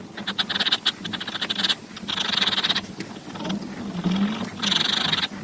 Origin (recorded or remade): recorded